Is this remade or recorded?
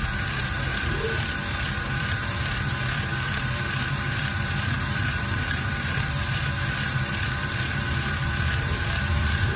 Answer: remade